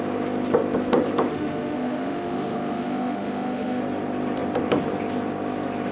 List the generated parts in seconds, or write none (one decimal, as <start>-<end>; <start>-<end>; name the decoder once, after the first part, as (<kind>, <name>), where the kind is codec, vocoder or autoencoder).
1.3-3.8 (autoencoder, DAC-VAE)